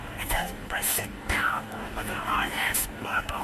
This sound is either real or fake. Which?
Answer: fake